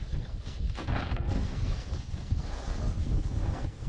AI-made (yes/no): yes